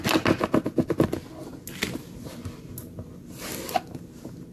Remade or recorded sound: recorded